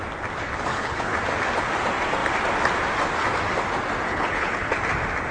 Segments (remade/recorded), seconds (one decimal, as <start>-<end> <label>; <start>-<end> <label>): 0.0-0.7 recorded; 0.7-1.2 remade; 1.2-4.1 recorded; 4.1-4.7 remade; 4.7-5.3 recorded